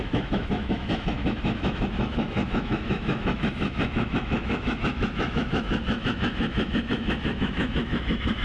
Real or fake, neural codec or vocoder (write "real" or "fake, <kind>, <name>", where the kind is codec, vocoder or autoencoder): fake, autoencoder, DAC-VAE